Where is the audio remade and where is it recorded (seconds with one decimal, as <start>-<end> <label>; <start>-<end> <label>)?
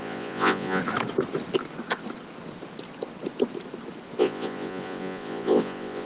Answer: 0.0-0.8 remade; 0.8-4.2 recorded; 4.2-6.1 remade